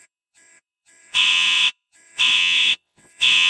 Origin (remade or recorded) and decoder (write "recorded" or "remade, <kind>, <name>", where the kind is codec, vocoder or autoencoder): remade, vocoder, WaveNeXt